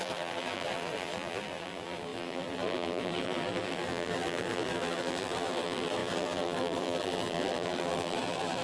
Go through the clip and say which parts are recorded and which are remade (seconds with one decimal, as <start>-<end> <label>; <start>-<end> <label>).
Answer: 0.0-8.6 remade

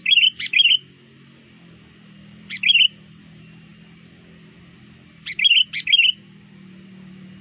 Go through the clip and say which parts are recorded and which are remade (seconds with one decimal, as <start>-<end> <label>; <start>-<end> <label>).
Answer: 0.0-7.4 recorded

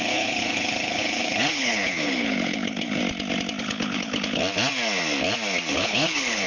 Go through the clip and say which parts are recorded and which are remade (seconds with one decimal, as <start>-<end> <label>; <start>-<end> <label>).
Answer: 0.0-3.0 remade; 3.0-3.6 recorded; 3.6-4.4 remade; 4.4-5.7 recorded; 5.7-6.5 remade

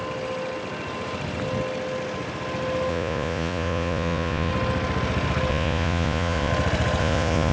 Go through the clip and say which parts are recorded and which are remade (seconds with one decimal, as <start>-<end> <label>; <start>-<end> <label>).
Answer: 0.0-2.9 recorded; 2.9-4.5 remade; 4.5-5.5 recorded; 5.5-6.5 remade; 6.5-7.0 recorded; 7.0-7.5 remade